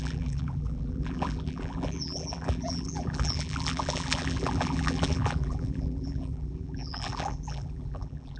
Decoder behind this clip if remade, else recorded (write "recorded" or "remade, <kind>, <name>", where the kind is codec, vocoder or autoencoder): remade, vocoder, BigVGAN v2